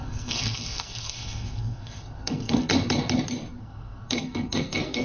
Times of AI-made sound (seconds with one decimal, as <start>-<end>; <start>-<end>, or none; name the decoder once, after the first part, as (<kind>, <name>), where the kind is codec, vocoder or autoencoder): 0.0-2.7 (codec, SNAC); 3.6-5.0